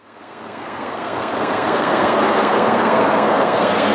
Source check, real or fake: fake